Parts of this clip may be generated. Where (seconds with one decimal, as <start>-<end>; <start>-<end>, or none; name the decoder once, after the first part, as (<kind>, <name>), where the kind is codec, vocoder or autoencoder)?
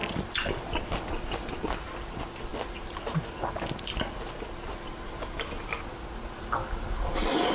0.0-0.6 (vocoder, BigVGAN v2)